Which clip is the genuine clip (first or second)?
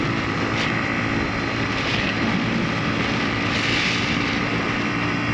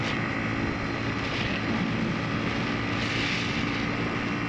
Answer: second